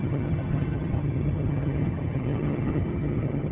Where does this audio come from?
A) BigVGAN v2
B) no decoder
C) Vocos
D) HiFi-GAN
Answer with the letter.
D